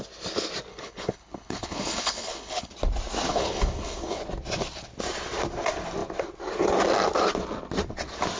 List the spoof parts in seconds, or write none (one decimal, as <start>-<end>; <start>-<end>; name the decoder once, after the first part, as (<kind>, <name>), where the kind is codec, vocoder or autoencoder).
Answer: 0.7-2.7 (codec, HILCodec); 3.3-4.2